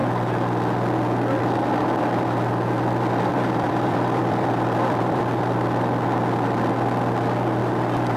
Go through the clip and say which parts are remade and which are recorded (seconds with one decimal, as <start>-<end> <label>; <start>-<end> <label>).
0.0-3.3 recorded; 3.3-5.2 remade; 5.2-7.6 recorded; 7.6-8.2 remade

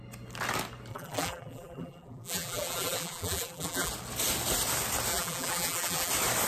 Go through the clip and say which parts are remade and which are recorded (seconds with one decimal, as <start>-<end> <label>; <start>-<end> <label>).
0.0-0.9 recorded; 0.9-3.9 remade; 3.9-5.1 recorded; 5.1-6.1 remade; 6.1-6.5 recorded

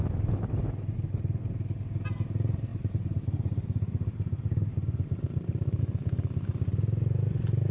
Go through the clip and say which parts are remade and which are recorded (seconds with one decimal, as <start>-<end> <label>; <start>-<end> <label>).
0.0-2.7 recorded; 2.7-5.8 remade; 5.8-7.7 recorded

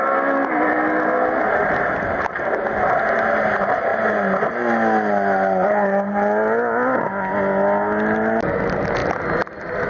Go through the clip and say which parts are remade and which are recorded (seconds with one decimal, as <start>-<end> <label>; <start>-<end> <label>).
0.0-9.0 recorded; 9.0-9.5 remade; 9.5-9.9 recorded

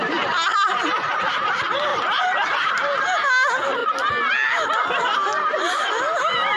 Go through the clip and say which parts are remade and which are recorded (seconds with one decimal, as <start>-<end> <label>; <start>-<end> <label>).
0.0-1.9 recorded; 1.9-2.7 remade; 2.7-6.6 recorded

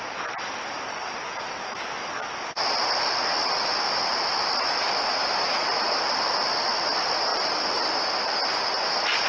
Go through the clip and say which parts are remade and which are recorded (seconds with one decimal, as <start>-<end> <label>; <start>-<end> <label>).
0.0-5.2 recorded; 5.2-6.1 remade; 6.1-7.3 recorded; 7.3-8.9 remade; 8.9-9.3 recorded

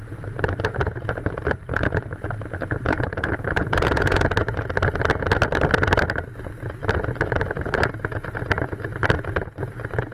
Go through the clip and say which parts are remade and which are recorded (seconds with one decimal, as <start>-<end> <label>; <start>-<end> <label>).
0.0-4.6 remade; 4.6-6.8 recorded; 6.8-7.8 remade; 7.8-10.1 recorded